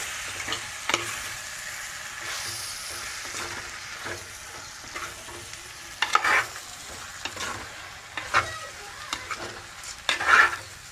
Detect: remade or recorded recorded